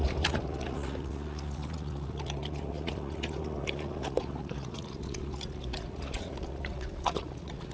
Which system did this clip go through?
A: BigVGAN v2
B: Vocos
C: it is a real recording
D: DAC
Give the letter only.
B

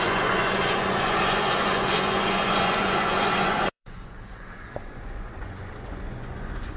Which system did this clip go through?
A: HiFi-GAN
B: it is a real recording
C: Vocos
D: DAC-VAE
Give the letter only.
C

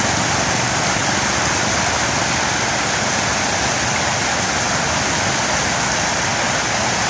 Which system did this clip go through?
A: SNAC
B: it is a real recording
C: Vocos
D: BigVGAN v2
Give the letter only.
B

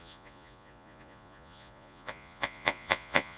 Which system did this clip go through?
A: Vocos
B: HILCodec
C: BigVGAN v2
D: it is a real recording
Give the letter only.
A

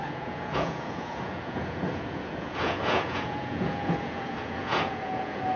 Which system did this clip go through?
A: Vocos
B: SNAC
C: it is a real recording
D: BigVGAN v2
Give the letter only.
A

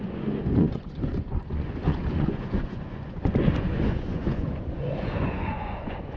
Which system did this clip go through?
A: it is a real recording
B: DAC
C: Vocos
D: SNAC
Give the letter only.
C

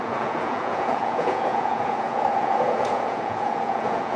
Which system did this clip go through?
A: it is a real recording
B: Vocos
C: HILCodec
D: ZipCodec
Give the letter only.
B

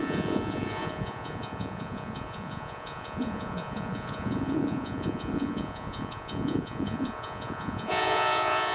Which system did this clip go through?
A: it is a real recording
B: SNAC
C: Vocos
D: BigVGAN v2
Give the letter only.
C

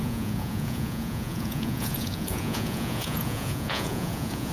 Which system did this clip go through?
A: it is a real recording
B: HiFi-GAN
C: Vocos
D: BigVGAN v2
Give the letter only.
C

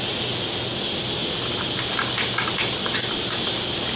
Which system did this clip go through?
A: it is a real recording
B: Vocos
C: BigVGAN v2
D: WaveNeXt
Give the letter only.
A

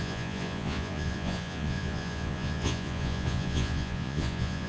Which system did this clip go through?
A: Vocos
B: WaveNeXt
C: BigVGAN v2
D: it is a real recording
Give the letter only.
A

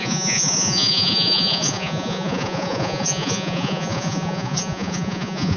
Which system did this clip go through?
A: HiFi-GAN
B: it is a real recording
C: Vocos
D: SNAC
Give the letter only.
C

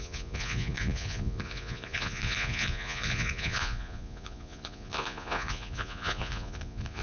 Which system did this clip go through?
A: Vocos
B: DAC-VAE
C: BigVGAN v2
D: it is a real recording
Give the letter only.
A